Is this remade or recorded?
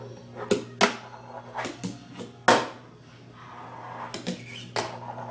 recorded